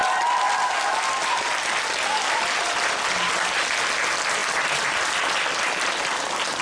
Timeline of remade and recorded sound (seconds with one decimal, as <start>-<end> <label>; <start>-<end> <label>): 0.0-6.6 recorded